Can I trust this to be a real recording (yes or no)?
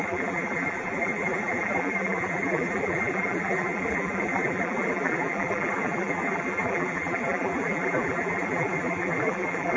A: no